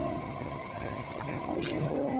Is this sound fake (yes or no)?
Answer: yes